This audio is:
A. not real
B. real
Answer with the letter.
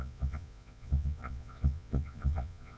A